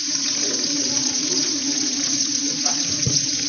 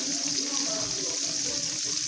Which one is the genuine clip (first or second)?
second